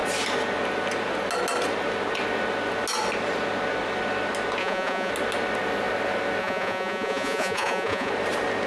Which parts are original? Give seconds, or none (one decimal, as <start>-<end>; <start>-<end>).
0.0-4.6; 5.1-6.4; 8.1-8.7